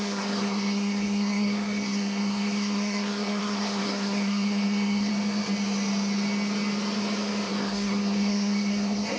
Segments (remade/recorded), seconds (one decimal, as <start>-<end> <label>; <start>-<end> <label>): 0.0-5.1 remade; 5.1-7.5 recorded; 7.5-9.2 remade